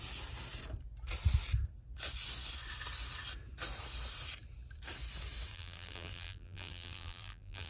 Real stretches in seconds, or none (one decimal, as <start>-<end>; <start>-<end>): 0.0-5.5